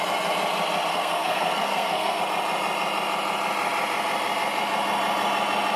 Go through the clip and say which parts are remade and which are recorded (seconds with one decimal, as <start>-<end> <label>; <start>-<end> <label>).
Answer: 0.0-0.9 recorded; 0.9-2.2 remade; 2.2-5.8 recorded